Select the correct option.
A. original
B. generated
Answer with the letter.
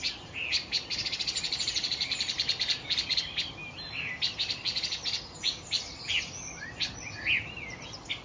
A